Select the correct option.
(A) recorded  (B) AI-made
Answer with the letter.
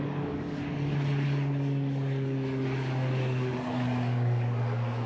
B